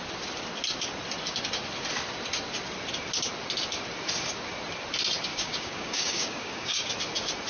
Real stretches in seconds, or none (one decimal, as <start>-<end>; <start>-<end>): 0.0-5.3; 6.9-7.5